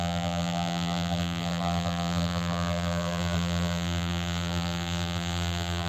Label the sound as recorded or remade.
remade